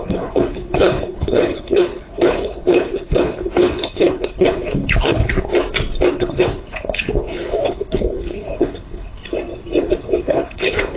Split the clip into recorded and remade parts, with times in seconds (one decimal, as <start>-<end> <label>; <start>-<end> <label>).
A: 0.0-5.5 remade; 5.5-6.1 recorded; 6.1-9.2 remade; 9.2-9.8 recorded; 9.8-11.0 remade